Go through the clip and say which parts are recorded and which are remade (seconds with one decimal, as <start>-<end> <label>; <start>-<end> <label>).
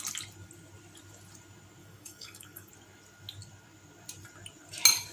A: 0.0-1.8 recorded; 1.8-2.7 remade; 2.7-5.1 recorded